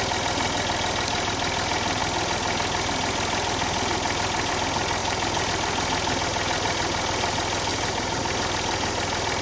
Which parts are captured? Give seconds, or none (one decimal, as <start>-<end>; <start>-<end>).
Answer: 0.0-5.0; 5.5-7.7; 8.2-9.4